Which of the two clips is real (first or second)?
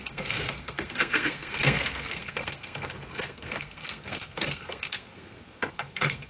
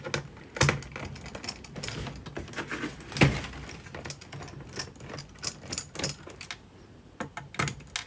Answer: second